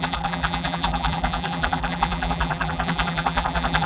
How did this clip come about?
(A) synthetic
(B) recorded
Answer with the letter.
A